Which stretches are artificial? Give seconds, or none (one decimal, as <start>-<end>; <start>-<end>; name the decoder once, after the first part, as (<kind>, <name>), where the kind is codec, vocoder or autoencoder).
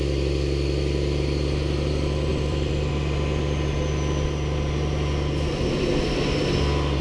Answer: 2.3-2.9 (vocoder, BigVGAN v2)